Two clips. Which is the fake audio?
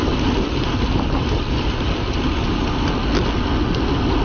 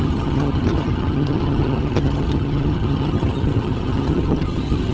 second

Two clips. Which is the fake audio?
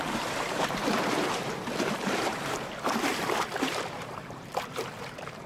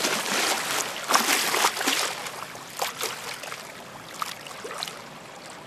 first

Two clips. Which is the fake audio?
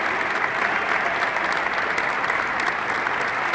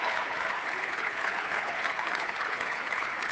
second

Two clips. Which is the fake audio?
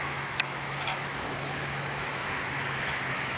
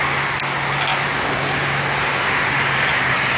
first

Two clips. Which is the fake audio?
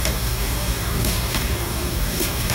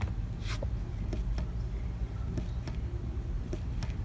first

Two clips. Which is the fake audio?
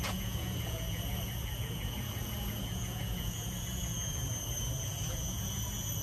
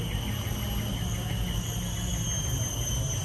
first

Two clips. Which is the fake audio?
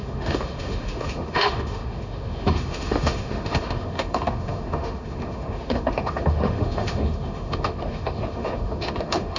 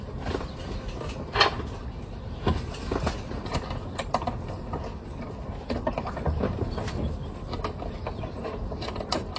first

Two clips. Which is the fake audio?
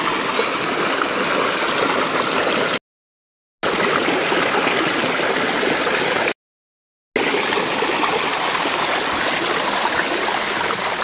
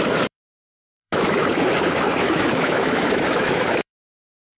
second